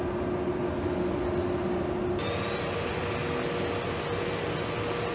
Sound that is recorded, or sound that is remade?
recorded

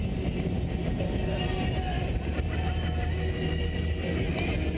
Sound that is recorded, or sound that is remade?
recorded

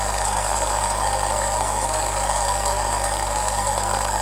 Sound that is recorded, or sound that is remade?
remade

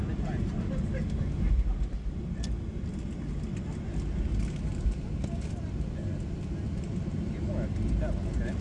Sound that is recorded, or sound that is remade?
recorded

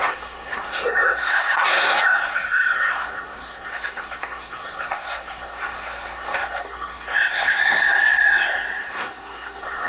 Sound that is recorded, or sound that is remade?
remade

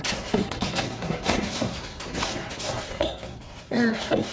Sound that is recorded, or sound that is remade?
remade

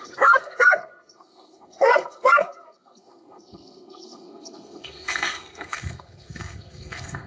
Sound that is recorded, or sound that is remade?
remade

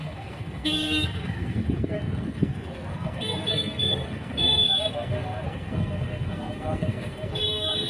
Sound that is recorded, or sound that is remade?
remade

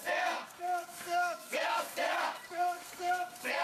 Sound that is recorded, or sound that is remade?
remade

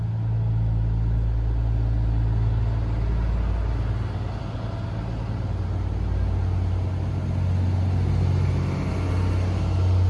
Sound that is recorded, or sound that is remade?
recorded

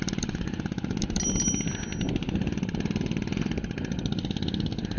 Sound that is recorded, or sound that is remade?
recorded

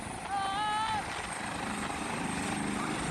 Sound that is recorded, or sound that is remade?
recorded